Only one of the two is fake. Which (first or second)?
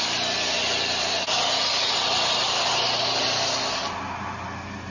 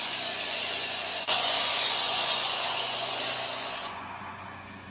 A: second